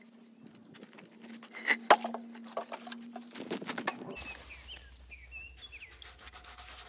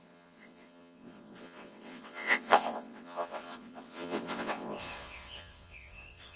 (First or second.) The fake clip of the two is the second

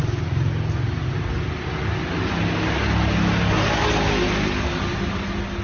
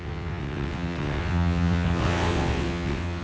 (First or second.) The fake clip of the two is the second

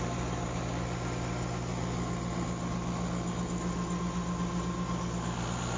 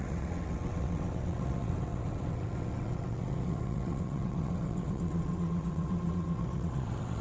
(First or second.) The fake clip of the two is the second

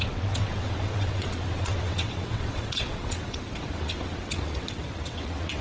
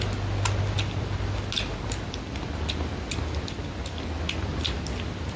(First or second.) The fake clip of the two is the first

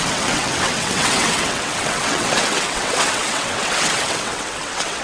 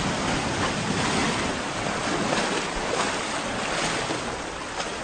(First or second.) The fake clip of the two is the first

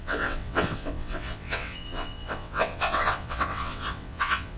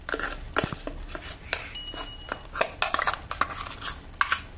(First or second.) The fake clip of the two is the first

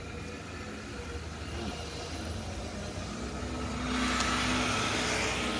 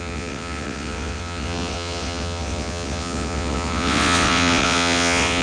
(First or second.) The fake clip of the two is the second